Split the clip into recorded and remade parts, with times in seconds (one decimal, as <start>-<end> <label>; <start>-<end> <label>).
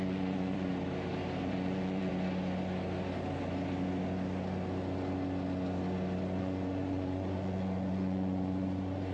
0.0-0.7 remade; 0.7-1.4 recorded; 1.4-2.1 remade; 2.1-6.4 recorded; 6.4-9.1 remade